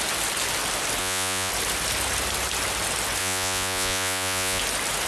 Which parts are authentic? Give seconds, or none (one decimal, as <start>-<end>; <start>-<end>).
0.0-1.0; 1.5-3.2; 4.6-5.1